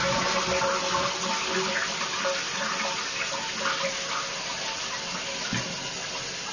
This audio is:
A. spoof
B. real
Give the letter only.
B